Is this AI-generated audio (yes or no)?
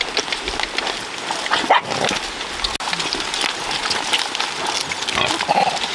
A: no